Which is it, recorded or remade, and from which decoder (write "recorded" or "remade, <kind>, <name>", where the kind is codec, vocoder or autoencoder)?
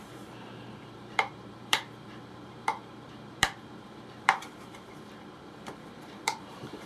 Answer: remade, vocoder, BigVGAN v2